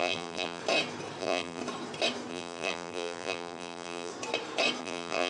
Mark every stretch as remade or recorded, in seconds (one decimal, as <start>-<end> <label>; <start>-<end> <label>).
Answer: 0.0-0.6 remade; 0.6-1.2 recorded; 1.2-1.6 remade; 1.6-2.3 recorded; 2.3-4.1 remade; 4.1-4.8 recorded; 4.8-5.3 remade